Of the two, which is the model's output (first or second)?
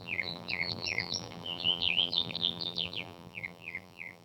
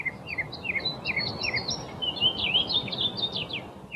first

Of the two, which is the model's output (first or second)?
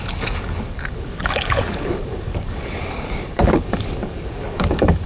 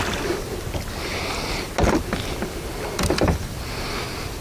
first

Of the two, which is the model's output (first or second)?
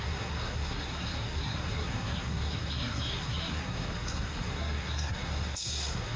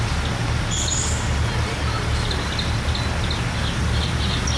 first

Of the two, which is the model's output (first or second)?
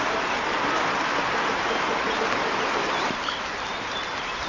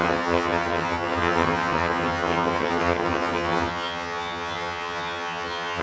second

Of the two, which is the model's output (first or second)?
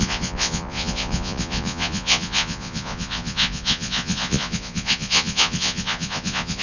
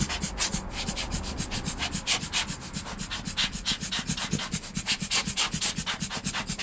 first